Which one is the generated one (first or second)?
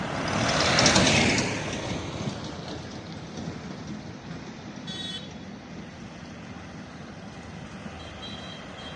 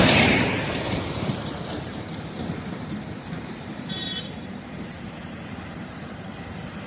second